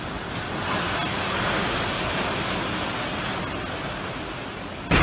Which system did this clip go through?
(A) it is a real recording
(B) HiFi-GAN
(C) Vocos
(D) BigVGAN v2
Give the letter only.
A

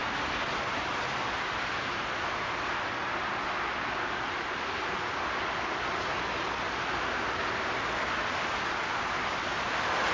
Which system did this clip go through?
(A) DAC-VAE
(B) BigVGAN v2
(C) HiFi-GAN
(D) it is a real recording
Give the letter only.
D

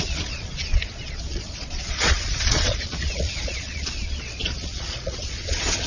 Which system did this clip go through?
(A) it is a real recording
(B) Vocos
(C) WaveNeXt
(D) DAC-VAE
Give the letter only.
B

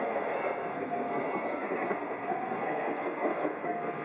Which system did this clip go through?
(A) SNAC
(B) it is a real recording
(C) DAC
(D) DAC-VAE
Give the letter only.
A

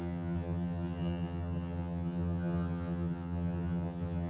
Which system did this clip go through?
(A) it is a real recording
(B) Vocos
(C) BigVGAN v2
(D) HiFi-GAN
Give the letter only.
D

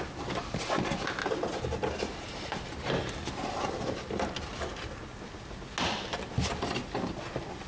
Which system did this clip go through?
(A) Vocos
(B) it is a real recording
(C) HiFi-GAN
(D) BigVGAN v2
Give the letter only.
B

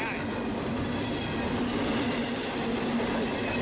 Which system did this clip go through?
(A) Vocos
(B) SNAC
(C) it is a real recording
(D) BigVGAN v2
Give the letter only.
C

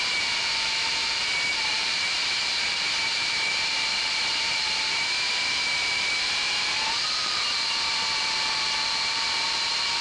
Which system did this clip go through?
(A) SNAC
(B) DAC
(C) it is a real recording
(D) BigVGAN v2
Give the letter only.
D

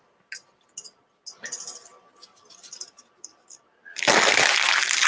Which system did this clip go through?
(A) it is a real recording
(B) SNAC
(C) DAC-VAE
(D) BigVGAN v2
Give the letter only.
A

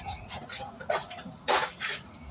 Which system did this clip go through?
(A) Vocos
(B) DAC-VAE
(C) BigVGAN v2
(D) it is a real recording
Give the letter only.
A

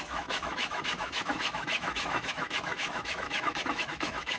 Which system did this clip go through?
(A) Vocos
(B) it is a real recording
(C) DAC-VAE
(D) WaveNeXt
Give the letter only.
C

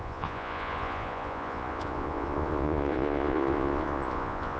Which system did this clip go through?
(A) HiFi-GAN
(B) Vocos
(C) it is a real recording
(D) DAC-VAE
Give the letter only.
B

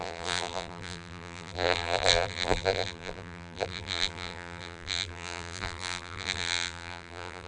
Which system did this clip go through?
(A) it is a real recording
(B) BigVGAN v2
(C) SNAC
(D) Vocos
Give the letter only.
B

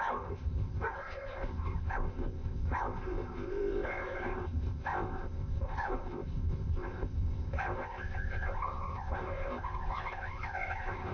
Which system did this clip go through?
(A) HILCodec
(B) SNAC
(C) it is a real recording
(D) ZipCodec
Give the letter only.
D